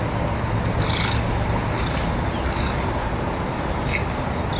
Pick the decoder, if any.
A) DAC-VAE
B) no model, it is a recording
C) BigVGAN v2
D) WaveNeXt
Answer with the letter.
B